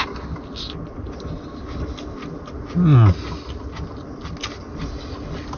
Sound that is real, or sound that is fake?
real